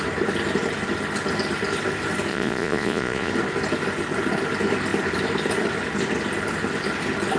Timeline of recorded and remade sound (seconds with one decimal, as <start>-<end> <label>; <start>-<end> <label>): 0.0-2.3 recorded; 2.3-3.3 remade; 3.3-7.4 recorded